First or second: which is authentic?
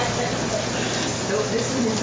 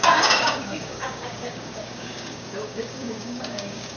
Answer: first